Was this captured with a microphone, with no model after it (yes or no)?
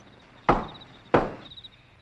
yes